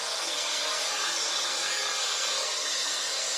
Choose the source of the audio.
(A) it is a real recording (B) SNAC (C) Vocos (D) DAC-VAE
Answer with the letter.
B